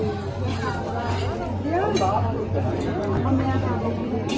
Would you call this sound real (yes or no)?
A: yes